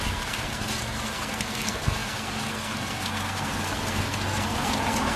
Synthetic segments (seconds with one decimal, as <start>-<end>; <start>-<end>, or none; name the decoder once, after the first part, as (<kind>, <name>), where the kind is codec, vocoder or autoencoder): 0.0-5.2 (codec, SNAC)